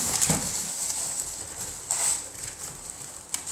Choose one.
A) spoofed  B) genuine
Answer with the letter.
B